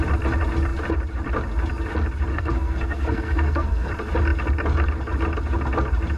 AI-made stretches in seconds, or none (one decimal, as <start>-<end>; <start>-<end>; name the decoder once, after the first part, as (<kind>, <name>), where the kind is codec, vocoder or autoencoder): 2.3-3.9 (codec, SNAC)